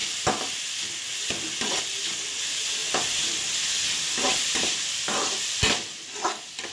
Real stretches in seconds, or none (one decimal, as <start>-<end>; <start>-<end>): 0.0-6.7

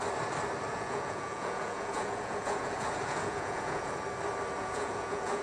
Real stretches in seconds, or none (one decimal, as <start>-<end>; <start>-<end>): 0.0-0.7; 3.9-4.6

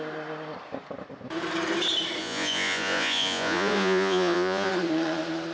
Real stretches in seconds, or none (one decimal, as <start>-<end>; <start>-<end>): 0.0-2.2; 4.7-5.5

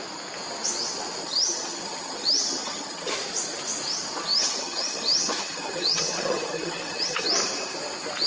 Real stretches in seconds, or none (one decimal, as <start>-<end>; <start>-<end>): 0.0-1.2; 3.1-4.3; 7.3-8.3

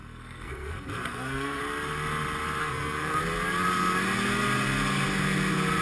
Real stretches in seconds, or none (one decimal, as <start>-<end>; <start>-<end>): 1.6-2.6; 3.2-5.8

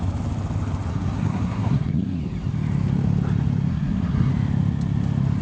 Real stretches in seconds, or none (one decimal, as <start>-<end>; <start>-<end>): 0.0-0.9; 2.2-3.7; 4.3-5.4

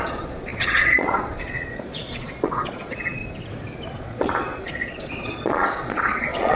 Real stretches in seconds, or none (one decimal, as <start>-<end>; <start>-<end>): 3.2-4.0

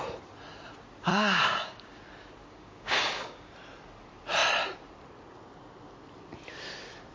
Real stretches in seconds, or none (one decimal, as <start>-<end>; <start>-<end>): 0.0-1.1; 2.0-2.4; 3.5-7.1